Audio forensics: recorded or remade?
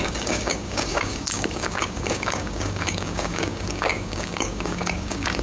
remade